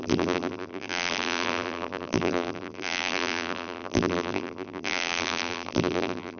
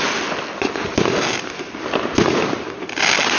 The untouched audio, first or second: second